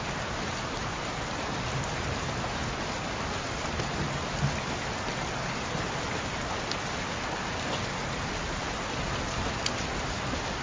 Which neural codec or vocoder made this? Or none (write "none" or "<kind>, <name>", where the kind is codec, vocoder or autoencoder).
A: none